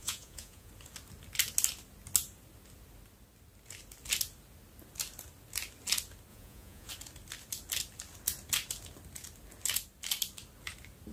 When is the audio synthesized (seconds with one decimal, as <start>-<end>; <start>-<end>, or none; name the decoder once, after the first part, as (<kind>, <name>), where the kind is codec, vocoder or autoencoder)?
0.0-0.7 (vocoder, Vocos); 6.3-6.9